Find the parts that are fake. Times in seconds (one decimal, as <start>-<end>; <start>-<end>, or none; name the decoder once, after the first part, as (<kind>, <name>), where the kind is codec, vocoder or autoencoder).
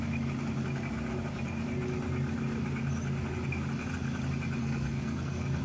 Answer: 4.6-5.6 (codec, SNAC)